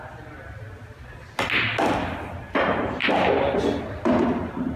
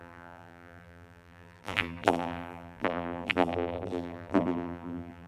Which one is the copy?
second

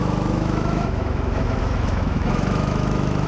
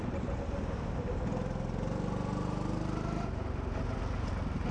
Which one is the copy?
first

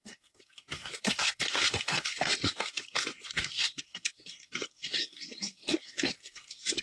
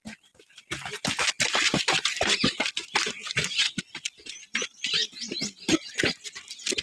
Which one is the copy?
first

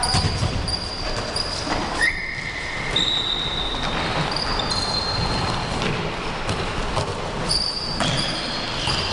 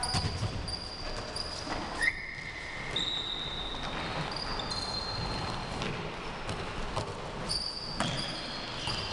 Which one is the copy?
first